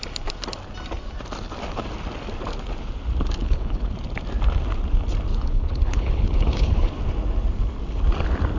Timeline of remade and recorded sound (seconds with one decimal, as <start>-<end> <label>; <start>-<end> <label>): 0.0-3.4 recorded; 3.4-3.9 remade; 3.9-5.3 recorded; 5.3-6.9 remade; 6.9-8.6 recorded